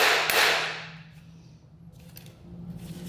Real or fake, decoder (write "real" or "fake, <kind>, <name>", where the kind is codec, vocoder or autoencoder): real